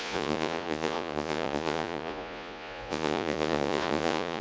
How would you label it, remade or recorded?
remade